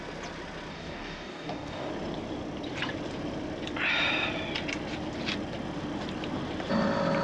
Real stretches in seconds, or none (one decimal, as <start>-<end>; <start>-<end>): 0.0-0.7; 1.9-7.2